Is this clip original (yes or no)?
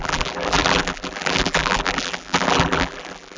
no